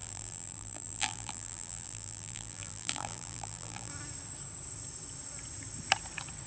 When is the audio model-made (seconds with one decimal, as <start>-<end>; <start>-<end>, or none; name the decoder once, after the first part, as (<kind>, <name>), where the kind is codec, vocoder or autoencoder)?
0.0-3.9 (vocoder, BigVGAN v2)